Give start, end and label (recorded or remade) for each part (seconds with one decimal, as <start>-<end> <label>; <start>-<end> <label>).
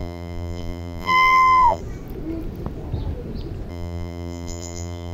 0.0-1.8 remade; 1.8-3.7 recorded; 3.7-5.1 remade